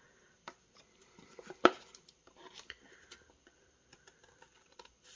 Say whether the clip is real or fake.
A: fake